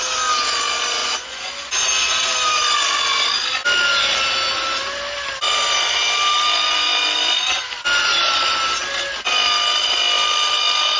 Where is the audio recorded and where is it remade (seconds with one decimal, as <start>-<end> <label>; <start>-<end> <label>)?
0.0-1.0 recorded; 1.0-1.7 remade; 1.7-11.0 recorded